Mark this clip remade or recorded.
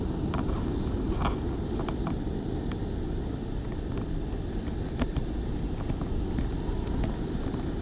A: recorded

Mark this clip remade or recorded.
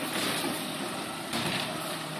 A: recorded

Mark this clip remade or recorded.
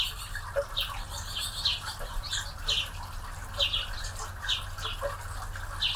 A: recorded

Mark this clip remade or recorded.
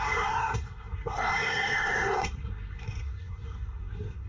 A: remade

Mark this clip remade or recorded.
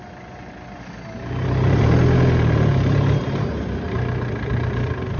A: recorded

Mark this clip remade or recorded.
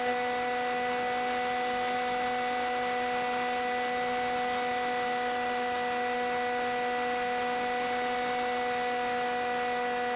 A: recorded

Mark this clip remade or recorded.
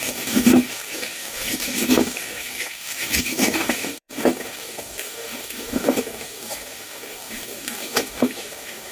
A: remade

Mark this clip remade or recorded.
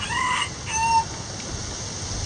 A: recorded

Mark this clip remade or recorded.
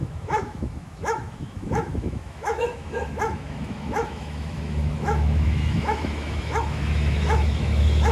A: remade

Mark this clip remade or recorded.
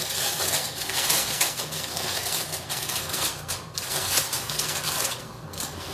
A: remade